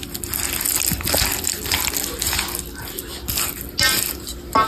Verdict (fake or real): real